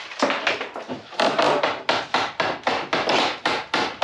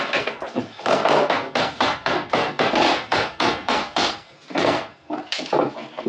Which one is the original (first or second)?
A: first